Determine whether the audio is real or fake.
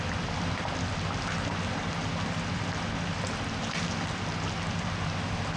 real